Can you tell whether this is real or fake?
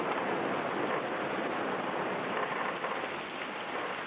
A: real